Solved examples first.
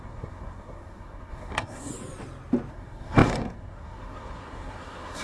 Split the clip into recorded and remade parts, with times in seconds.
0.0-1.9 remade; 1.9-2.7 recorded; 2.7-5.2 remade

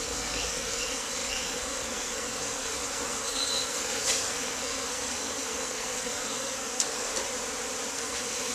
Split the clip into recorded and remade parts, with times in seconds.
0.0-7.1 remade; 7.1-7.9 recorded; 7.9-8.5 remade

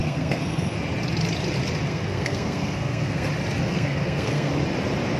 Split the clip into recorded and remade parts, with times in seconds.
0.0-0.7 remade; 0.7-1.9 recorded; 1.9-3.3 remade; 3.3-3.7 recorded; 3.7-4.5 remade; 4.5-5.2 recorded